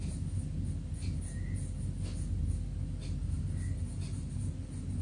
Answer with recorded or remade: recorded